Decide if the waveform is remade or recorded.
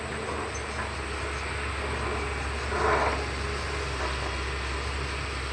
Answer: recorded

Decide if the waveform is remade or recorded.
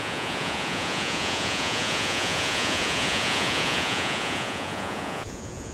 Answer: remade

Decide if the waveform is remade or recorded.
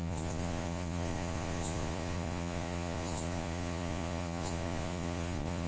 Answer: remade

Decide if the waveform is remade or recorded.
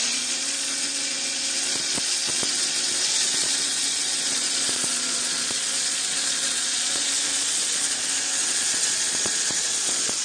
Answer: remade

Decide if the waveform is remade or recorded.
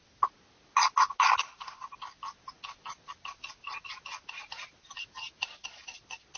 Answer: recorded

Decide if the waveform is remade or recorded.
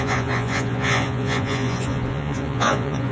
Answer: remade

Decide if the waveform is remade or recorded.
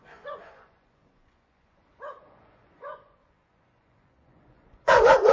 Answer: remade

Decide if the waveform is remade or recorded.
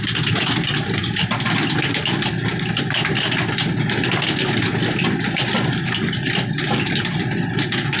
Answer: recorded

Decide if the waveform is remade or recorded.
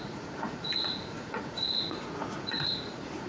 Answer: remade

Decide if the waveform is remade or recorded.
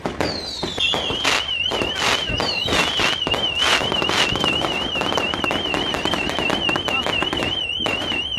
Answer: recorded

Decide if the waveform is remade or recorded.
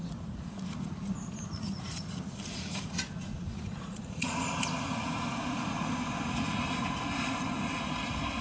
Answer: remade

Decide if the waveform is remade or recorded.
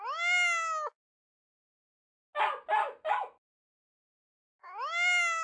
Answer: recorded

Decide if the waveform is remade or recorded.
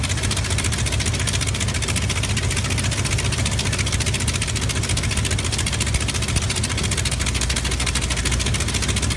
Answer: recorded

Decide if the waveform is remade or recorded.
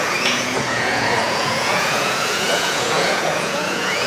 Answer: remade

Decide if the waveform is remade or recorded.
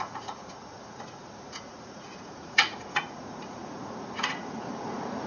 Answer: remade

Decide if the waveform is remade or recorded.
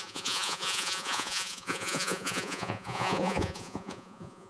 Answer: remade